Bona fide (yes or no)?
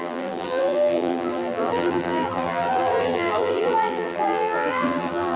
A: no